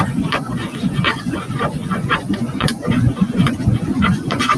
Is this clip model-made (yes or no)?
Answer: yes